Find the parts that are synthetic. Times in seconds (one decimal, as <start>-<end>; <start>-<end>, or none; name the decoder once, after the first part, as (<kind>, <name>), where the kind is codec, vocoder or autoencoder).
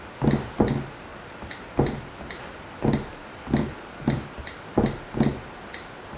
1.1-1.7 (vocoder, BigVGAN v2); 3.2-4.7